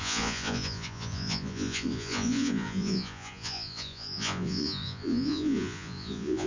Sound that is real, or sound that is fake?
fake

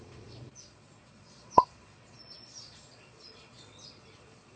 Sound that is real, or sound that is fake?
fake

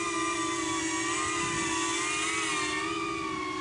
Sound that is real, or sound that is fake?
real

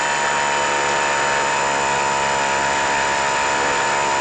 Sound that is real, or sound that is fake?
real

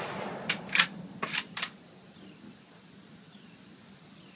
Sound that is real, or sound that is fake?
real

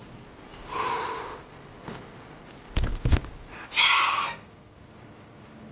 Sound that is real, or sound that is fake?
real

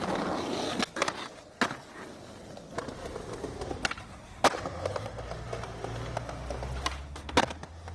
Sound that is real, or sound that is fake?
real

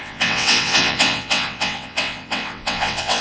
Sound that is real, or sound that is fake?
fake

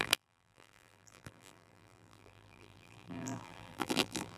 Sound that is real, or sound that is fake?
fake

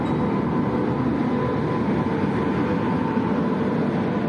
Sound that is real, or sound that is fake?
real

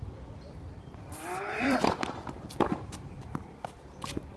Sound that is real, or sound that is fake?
fake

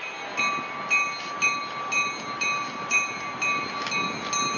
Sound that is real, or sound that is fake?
real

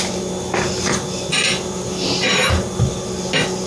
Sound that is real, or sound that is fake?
real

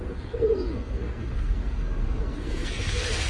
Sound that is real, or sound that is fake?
fake